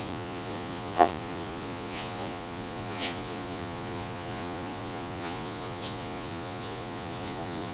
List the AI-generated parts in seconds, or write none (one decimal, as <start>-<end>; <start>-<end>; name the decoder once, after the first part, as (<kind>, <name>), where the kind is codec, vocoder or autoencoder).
0.0-7.7 (vocoder, Vocos)